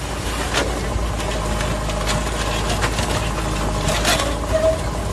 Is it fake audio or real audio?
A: real